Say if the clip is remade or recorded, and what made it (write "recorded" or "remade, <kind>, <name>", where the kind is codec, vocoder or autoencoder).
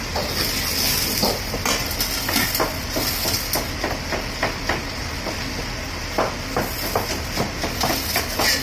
recorded